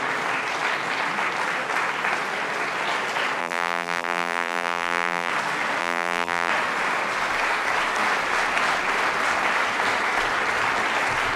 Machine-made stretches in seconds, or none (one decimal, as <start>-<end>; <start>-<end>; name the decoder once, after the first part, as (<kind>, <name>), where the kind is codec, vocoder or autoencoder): 3.4-5.3 (vocoder, BigVGAN v2); 5.8-6.5